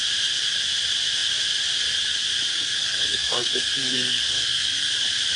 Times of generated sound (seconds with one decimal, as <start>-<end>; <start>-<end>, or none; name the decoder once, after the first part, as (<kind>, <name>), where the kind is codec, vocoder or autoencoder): 2.5-4.9 (codec, SNAC)